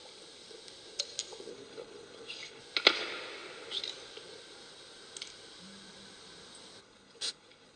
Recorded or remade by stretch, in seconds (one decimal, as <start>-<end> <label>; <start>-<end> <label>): 0.0-1.5 recorded; 1.5-2.6 remade; 2.6-6.8 recorded; 6.8-7.8 remade